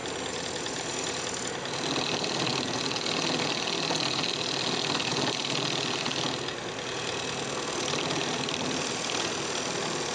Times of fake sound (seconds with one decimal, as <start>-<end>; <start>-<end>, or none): none